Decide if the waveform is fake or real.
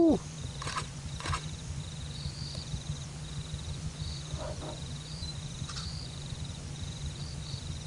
fake